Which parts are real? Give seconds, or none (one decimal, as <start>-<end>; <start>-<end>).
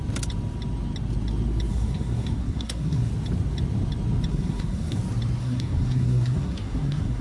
0.0-1.7; 3.1-4.3; 5.0-5.4